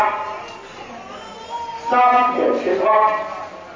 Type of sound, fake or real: real